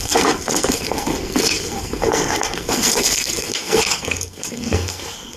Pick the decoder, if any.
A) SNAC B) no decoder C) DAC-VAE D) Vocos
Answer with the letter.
A